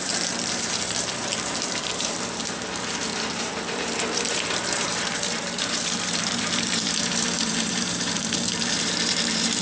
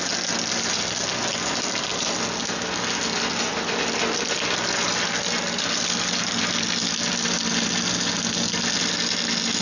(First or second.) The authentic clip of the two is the second